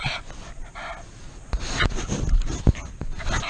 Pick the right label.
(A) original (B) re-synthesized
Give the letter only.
A